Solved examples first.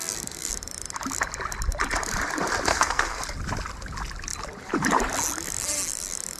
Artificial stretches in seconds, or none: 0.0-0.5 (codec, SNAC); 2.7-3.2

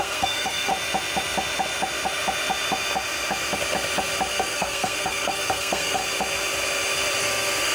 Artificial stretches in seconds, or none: 0.0-0.7 (codec, SNAC); 4.3-6.0; 7.2-7.7

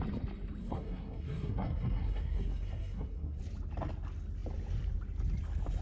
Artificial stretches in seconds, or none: 0.6-3.4 (codec, SNAC)

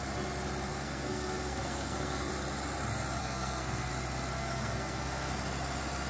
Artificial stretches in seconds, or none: 0.7-2.3 (codec, SNAC); 3.2-3.9; 4.4-5.4

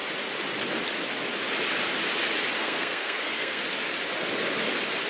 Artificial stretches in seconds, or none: 2.6-3.6 (codec, SNAC)

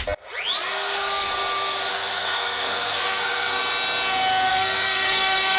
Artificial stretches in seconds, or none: 0.7-1.3 (codec, SNAC); 1.9-3.6; 4.5-5.6

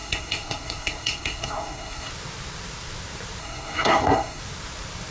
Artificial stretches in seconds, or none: 0.0-2.1 (codec, SNAC); 3.4-4.4

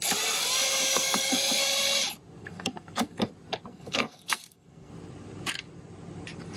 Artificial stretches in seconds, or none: 0.9-1.6 (codec, SNAC); 2.4-3.3; 3.7-4.9